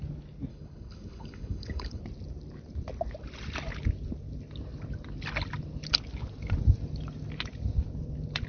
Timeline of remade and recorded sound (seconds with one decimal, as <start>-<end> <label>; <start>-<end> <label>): 0.0-0.5 recorded; 0.5-2.0 remade; 2.0-8.5 recorded